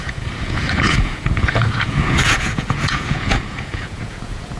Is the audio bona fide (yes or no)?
no